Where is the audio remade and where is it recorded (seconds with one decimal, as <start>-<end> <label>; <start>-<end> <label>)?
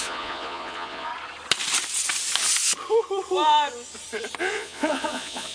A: 0.0-1.1 remade; 1.1-4.4 recorded; 4.4-5.5 remade